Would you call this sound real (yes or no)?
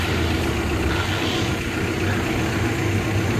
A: yes